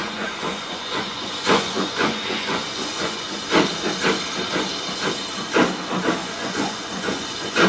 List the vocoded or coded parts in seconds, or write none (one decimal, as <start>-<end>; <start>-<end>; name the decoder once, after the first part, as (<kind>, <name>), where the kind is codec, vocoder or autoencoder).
0.0-3.4 (vocoder, Vocos); 6.2-7.7